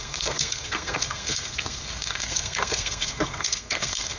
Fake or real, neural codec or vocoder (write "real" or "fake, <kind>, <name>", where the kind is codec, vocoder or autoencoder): fake, codec, SNAC